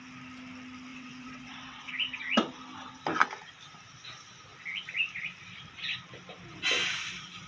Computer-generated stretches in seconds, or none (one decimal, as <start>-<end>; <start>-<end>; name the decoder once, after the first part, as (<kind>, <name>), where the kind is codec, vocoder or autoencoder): 0.9-1.9 (vocoder, WaveNeXt)